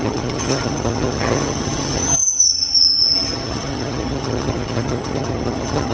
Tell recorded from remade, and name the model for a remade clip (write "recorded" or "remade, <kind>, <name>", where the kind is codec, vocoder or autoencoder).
remade, vocoder, HiFi-GAN